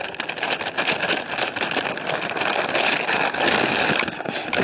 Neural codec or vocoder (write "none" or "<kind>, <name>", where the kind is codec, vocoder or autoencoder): none